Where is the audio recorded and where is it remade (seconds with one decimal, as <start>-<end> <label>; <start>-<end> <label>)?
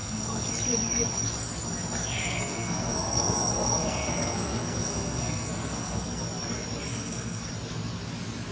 0.0-0.5 remade; 0.5-2.0 recorded; 2.0-6.2 remade; 6.2-6.9 recorded; 6.9-7.5 remade; 7.5-8.5 recorded